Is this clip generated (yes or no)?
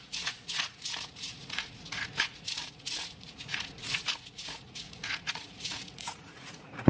yes